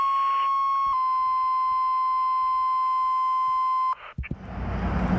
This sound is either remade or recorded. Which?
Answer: recorded